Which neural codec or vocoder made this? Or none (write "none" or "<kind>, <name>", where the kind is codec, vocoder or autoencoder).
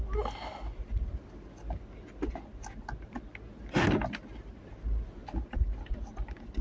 none